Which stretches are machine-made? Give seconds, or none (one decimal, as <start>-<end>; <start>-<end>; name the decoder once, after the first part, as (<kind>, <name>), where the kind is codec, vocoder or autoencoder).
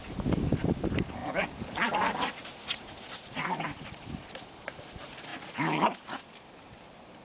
0.0-7.2 (vocoder, BigVGAN v2)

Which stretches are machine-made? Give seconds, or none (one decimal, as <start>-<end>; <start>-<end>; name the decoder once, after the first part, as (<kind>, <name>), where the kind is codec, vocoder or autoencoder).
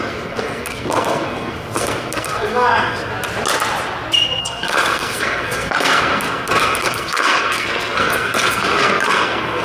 0.0-3.1 (codec, SNAC); 4.4-9.6